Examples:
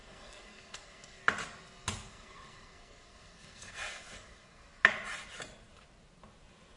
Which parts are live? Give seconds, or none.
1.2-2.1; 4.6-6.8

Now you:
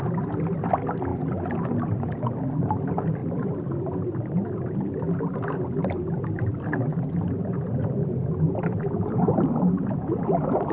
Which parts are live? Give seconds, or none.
0.0-10.7